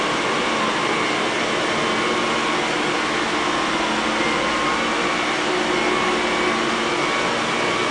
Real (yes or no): yes